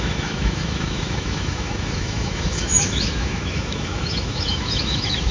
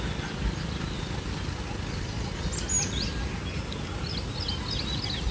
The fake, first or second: first